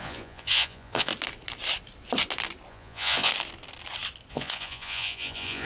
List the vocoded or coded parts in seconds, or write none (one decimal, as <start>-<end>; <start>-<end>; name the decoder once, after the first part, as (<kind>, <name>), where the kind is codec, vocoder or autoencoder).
0.0-1.1 (vocoder, Vocos); 2.7-3.3; 4.3-5.6